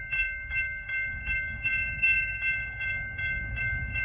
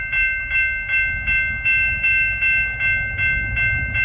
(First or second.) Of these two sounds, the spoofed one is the first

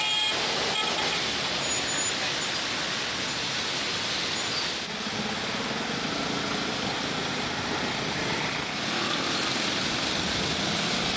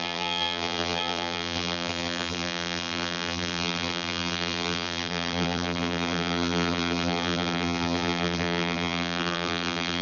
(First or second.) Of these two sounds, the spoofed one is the second